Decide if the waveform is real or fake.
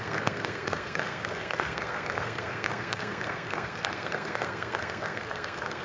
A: fake